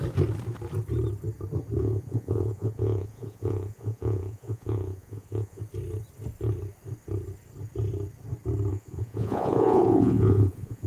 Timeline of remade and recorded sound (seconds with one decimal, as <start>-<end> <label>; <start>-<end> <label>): 0.0-1.8 recorded; 1.8-5.6 remade; 5.6-8.7 recorded; 8.7-10.9 remade